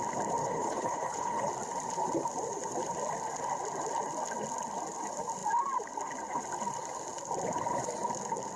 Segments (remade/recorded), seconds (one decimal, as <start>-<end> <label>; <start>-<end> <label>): 0.0-0.4 recorded; 0.4-1.5 remade; 1.5-8.6 recorded